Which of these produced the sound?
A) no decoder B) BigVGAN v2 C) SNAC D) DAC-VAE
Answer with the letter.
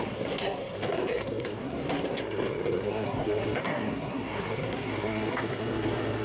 C